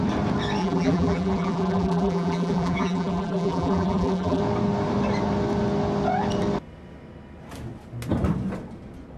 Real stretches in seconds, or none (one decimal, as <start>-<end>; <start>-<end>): 0.0-0.6; 4.4-9.2